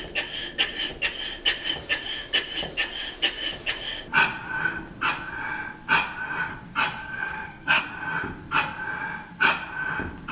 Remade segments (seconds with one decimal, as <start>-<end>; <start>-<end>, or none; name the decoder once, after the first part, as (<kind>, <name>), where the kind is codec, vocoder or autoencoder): 7.0-7.8 (codec, SNAC)